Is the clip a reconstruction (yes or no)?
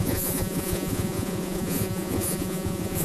yes